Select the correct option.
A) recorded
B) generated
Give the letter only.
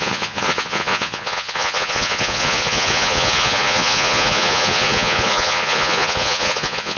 B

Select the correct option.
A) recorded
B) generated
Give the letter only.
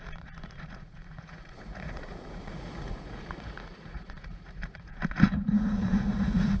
B